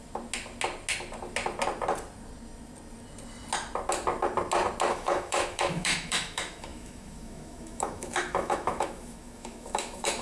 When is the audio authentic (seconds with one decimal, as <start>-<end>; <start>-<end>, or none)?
0.0-4.9

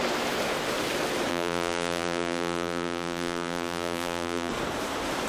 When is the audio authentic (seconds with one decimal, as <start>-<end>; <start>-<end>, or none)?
0.0-1.3; 4.5-5.3

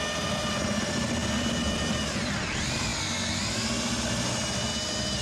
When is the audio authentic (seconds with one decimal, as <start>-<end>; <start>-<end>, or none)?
0.0-5.2

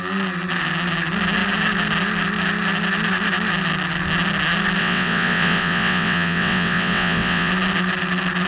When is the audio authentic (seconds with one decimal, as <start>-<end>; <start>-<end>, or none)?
0.0-4.8; 7.5-8.5

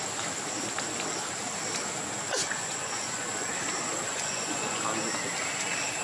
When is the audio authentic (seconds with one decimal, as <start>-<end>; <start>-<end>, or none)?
0.0-2.4; 3.5-4.1; 4.8-6.0